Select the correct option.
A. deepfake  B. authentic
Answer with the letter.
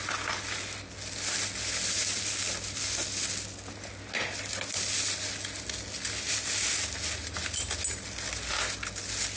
B